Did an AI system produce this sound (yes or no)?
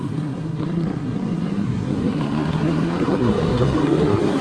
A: yes